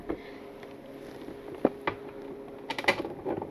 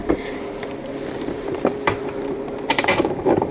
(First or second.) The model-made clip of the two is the second